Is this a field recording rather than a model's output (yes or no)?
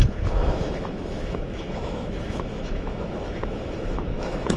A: no